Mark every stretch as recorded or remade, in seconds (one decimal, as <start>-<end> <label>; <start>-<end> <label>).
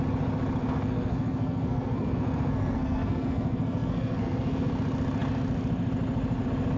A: 0.0-0.6 recorded; 0.6-4.7 remade; 4.7-6.8 recorded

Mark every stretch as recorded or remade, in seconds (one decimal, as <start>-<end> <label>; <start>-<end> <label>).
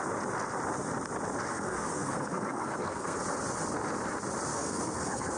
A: 0.0-1.5 recorded; 1.5-3.2 remade; 3.2-4.5 recorded; 4.5-5.4 remade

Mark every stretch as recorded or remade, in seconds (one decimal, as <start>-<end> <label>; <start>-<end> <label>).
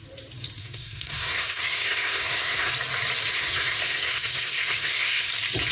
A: 0.0-0.6 recorded; 0.6-2.7 remade; 2.7-3.3 recorded; 3.3-5.3 remade; 5.3-5.7 recorded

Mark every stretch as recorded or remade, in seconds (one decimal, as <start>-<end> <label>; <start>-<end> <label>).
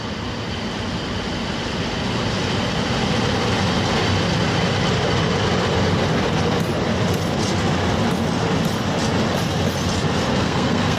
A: 0.0-10.3 recorded; 10.3-11.0 remade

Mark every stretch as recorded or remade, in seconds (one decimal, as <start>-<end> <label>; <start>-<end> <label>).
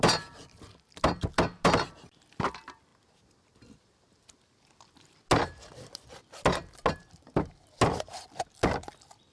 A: 0.0-9.3 recorded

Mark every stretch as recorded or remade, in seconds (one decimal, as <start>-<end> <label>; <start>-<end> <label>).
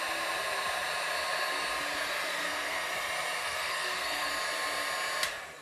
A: 0.0-2.3 recorded; 2.3-2.9 remade; 2.9-3.4 recorded; 3.4-4.3 remade; 4.3-5.6 recorded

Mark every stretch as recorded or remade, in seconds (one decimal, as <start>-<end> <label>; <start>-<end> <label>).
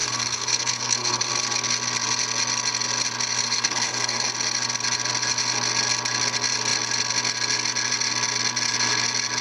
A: 0.0-1.3 remade; 1.3-3.4 recorded; 3.4-4.3 remade; 4.3-9.4 recorded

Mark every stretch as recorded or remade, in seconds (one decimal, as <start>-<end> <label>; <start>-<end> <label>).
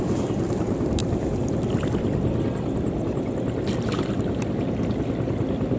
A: 0.0-5.8 recorded